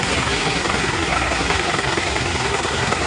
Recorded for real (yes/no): no